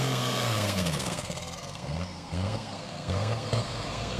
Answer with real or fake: fake